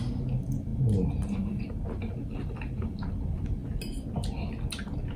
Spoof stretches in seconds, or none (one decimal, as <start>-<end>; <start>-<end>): none